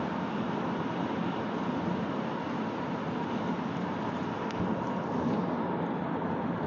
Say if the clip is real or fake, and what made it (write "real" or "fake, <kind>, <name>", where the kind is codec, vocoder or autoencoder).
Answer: real